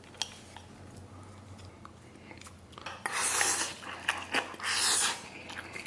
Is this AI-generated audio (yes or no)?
no